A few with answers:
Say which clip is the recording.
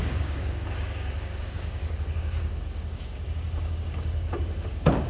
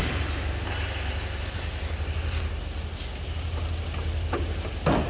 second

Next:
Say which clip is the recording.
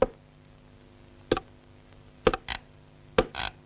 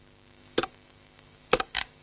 first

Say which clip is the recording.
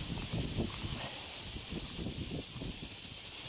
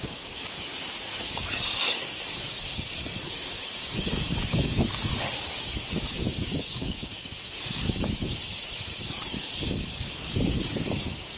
first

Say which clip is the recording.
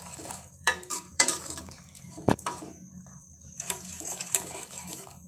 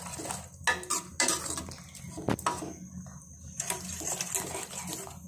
second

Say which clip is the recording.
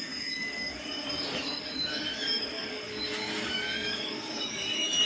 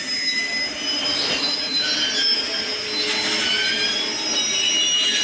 second